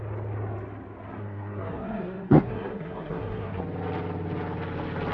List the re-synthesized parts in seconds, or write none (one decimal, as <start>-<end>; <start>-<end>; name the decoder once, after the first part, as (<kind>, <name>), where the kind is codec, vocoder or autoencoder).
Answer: 1.2-3.6 (codec, SNAC)